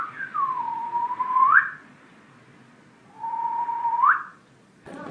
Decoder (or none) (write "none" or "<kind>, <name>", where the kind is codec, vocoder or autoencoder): vocoder, Vocos